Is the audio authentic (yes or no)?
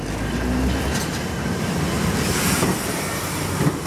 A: yes